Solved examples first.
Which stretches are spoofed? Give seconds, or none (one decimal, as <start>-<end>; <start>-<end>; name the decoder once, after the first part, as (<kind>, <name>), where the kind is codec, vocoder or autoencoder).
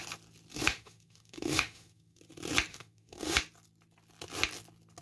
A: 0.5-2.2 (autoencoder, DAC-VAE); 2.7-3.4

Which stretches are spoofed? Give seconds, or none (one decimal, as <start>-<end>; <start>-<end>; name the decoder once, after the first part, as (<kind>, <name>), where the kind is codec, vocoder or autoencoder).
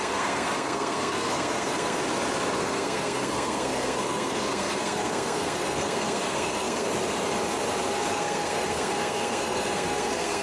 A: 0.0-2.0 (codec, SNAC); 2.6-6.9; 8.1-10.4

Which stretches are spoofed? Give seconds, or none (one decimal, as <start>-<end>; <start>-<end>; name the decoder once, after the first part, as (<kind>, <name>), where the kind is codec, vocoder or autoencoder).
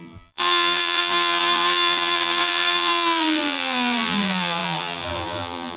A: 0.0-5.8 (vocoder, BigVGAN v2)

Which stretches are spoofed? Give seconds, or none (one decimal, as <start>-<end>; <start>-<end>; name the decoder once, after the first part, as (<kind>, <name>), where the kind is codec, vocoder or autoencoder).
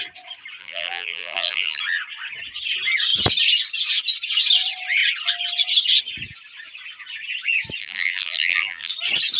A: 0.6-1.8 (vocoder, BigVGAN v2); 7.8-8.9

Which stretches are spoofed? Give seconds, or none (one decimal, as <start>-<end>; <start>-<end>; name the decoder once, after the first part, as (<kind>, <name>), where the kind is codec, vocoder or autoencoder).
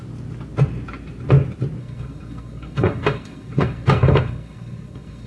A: 1.8-5.3 (codec, SNAC)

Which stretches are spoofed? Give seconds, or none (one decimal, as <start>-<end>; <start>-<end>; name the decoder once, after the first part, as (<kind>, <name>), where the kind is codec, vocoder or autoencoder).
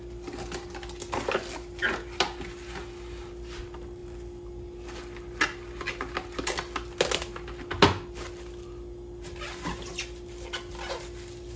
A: none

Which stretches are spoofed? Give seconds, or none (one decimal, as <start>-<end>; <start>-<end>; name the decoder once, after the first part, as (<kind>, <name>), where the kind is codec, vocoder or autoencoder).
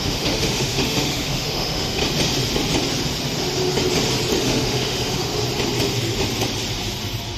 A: 0.0-2.0 (autoencoder, DAC-VAE); 4.4-5.3